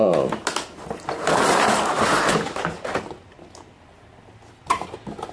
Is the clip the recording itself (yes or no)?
yes